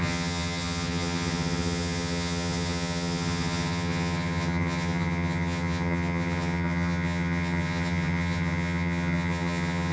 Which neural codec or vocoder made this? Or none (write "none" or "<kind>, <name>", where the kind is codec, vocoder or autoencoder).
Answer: vocoder, HiFi-GAN